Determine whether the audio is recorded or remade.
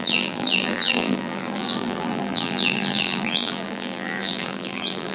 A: remade